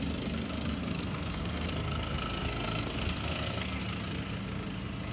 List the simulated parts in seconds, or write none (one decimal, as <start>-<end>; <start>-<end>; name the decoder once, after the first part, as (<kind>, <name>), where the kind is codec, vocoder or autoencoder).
0.8-3.8 (codec, SNAC)